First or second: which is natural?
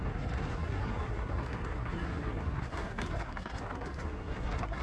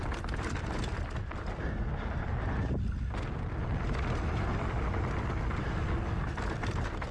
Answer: second